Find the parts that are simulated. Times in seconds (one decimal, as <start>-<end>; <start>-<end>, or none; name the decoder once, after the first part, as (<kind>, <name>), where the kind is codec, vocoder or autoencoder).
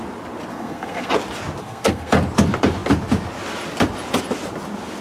0.5-1.1 (codec, SNAC); 1.6-2.1